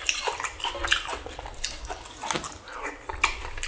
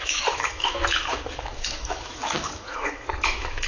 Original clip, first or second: first